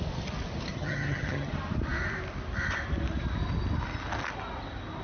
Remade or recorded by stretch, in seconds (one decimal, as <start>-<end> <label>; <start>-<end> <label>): 0.0-0.7 recorded; 0.7-1.5 remade; 1.5-5.0 recorded